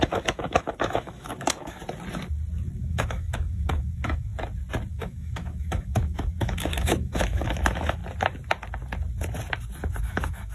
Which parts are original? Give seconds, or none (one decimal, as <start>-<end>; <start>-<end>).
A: 1.8-2.8; 4.3-4.9; 8.0-10.0

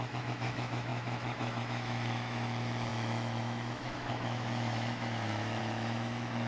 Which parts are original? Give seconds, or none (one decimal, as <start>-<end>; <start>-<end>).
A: none

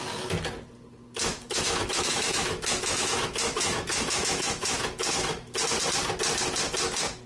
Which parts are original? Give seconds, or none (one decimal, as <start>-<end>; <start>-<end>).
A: 0.0-1.3; 5.7-7.3

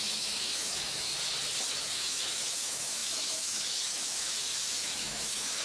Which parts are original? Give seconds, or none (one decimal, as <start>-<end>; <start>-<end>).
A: 1.1-1.7

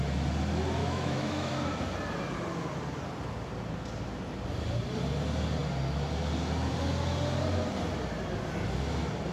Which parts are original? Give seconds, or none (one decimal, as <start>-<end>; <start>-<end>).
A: 0.0-0.8; 1.5-9.3